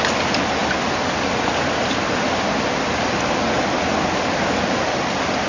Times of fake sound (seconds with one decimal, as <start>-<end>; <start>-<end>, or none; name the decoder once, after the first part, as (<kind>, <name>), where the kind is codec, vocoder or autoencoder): none